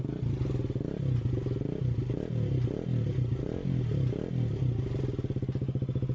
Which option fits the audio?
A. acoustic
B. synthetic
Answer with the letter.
A